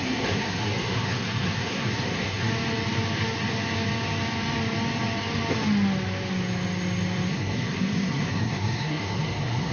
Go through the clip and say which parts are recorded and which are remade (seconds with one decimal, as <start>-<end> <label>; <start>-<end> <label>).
0.0-2.5 remade; 2.5-7.3 recorded; 7.3-9.7 remade